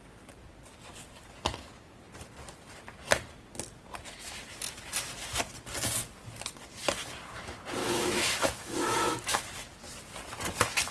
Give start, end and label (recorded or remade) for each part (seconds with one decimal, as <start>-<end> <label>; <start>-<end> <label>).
0.0-7.8 recorded; 7.8-9.4 remade; 9.4-10.9 recorded